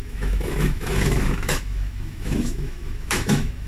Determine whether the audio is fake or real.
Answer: fake